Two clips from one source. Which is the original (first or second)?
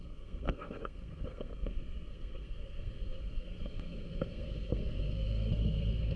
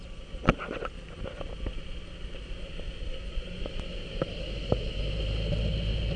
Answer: second